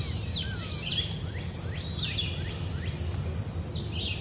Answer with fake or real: real